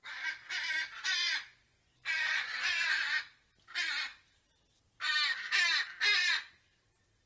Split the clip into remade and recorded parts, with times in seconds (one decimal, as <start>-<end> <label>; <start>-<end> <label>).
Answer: 0.0-3.2 remade; 3.2-6.1 recorded; 6.1-6.8 remade; 6.8-7.3 recorded